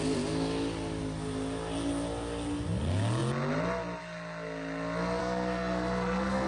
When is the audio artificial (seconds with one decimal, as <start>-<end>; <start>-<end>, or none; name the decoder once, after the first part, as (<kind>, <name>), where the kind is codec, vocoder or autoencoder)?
5.2-6.5 (codec, SNAC)